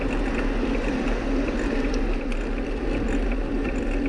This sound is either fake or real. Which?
real